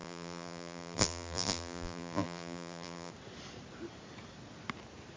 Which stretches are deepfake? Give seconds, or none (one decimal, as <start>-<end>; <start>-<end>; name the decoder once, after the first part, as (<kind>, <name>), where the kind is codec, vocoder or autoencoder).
0.0-3.1 (vocoder, BigVGAN v2)